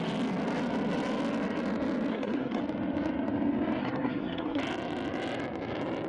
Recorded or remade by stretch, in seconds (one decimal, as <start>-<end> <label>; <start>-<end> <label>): 0.0-2.1 recorded; 2.1-2.6 remade; 2.6-3.8 recorded; 3.8-4.6 remade; 4.6-6.1 recorded